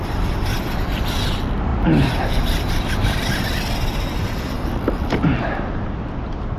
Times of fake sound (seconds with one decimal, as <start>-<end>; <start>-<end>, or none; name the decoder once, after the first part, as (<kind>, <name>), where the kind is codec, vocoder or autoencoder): 1.7-5.4 (vocoder, BigVGAN v2)